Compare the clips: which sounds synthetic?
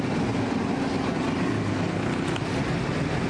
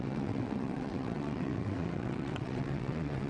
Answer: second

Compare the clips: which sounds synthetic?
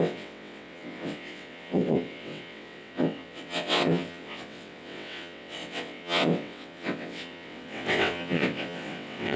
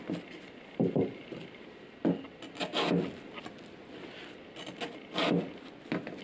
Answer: first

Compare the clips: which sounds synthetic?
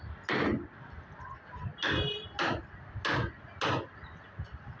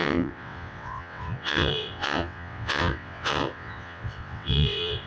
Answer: second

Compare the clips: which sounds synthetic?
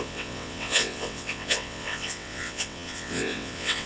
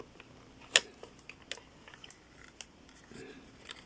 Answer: first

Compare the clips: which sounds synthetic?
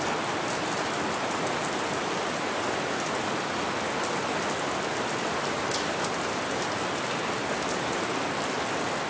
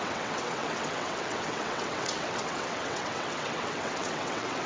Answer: second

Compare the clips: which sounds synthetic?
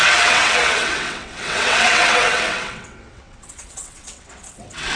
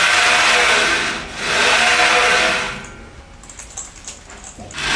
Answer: first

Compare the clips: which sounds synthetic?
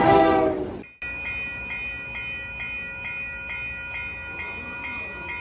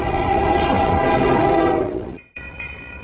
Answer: second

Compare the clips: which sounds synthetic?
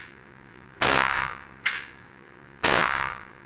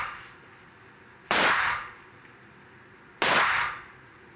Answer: first